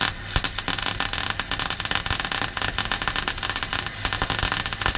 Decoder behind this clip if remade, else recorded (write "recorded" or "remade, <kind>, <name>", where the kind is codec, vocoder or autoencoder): recorded